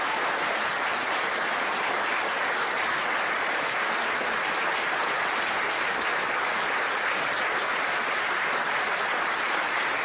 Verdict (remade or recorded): recorded